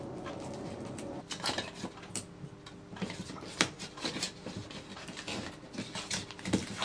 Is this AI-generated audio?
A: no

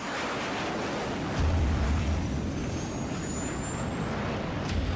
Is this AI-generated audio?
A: no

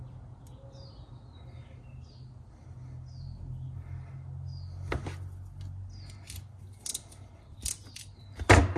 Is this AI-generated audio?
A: no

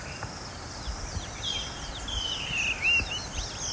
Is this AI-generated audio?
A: no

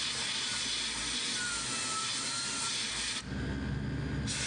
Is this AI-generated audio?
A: no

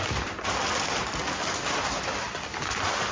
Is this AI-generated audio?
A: no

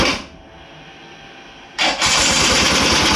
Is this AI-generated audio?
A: no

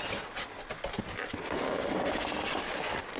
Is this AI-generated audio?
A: no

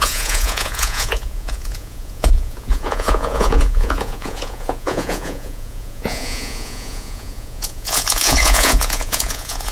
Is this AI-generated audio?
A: yes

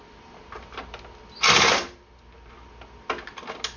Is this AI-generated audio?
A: no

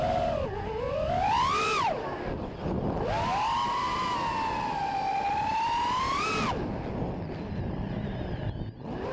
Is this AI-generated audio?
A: no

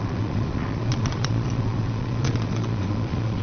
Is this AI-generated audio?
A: yes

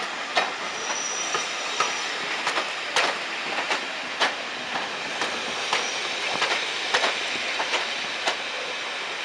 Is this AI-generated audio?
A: no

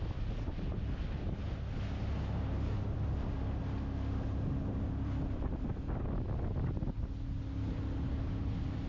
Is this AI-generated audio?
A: no